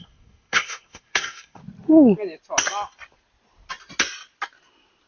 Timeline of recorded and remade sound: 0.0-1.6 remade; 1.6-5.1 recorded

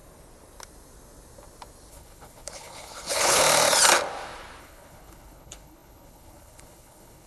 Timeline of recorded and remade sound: 0.0-1.9 recorded; 1.9-3.4 remade; 3.4-4.6 recorded; 4.6-7.3 remade